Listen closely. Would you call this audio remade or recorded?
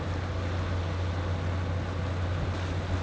recorded